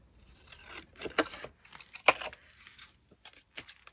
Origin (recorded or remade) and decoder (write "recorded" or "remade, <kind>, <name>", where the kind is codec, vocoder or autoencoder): recorded